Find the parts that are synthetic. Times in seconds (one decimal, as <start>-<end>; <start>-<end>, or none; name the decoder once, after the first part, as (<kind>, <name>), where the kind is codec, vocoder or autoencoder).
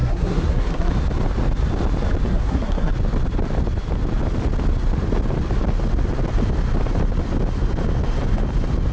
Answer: 0.0-0.9 (codec, SNAC); 2.3-2.9